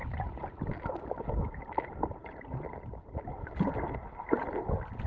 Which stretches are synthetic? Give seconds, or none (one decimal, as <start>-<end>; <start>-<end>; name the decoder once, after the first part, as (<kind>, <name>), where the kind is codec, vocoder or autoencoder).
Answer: 0.0-1.8 (vocoder, BigVGAN v2); 2.2-3.8